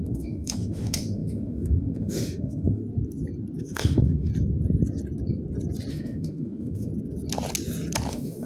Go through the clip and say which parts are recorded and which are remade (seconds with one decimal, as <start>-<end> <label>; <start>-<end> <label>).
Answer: 0.0-2.8 remade; 2.8-3.6 recorded; 3.6-4.3 remade; 4.3-5.9 recorded; 5.9-6.9 remade; 6.9-8.1 recorded; 8.1-8.5 remade